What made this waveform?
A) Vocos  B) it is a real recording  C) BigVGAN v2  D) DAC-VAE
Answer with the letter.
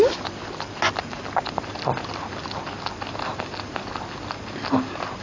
B